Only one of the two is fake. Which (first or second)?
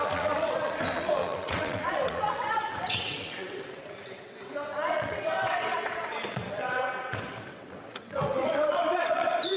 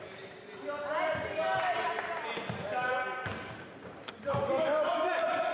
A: first